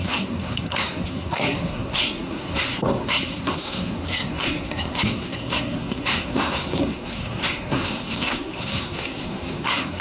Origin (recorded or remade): remade